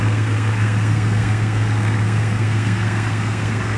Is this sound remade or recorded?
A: remade